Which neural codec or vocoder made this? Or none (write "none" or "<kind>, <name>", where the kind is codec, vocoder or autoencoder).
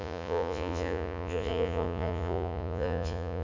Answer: vocoder, Vocos